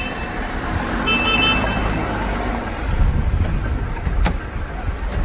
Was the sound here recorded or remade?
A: recorded